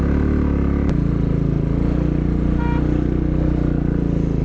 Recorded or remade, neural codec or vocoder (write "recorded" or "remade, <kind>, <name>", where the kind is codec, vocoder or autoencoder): recorded